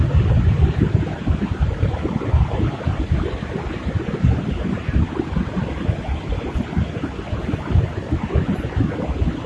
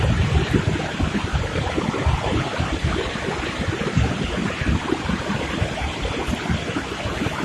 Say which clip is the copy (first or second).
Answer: second